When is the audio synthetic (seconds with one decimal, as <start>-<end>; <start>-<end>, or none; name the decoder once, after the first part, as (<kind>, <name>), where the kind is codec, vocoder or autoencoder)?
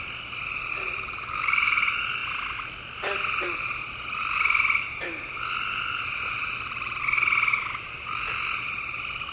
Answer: none